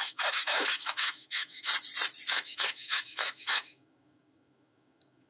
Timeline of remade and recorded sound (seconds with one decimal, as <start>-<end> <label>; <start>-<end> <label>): 0.0-1.7 remade; 1.7-2.3 recorded; 2.3-5.3 remade